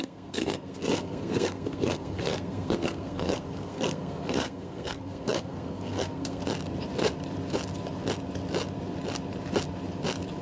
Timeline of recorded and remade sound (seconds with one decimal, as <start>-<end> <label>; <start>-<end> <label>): 0.0-6.4 remade; 6.4-10.4 recorded